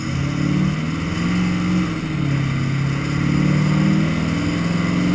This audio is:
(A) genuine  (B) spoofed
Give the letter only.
A